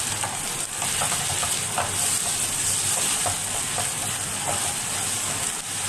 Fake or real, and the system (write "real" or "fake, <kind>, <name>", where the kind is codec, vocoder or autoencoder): real